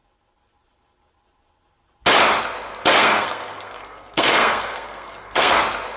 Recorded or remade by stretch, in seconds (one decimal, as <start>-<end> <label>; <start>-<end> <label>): 0.0-3.0 recorded; 3.0-5.6 remade; 5.6-6.0 recorded